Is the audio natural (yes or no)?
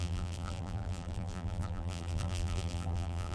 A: no